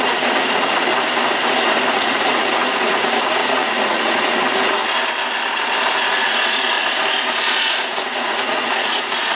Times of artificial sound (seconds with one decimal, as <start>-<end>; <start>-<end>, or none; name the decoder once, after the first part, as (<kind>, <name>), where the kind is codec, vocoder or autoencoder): 0.0-0.9 (vocoder, Vocos); 1.8-4.8; 6.0-6.8; 7.5-9.4